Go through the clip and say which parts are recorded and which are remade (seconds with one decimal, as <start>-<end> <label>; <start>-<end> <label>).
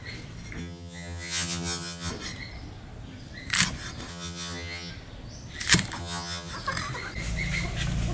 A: 0.0-0.6 recorded; 0.6-2.1 remade; 2.1-4.1 recorded; 4.1-4.9 remade; 4.9-6.0 recorded; 6.0-6.5 remade; 6.5-8.1 recorded